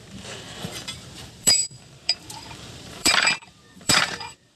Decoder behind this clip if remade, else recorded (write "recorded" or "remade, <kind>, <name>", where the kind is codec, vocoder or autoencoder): remade, vocoder, BigVGAN v2